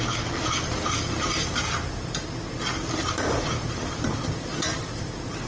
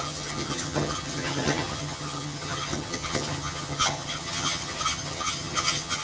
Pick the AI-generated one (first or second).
second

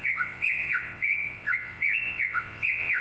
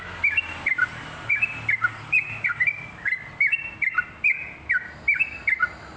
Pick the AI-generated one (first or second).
first